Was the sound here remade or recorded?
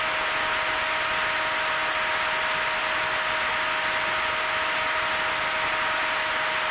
recorded